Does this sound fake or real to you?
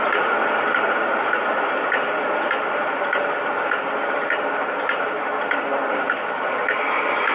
fake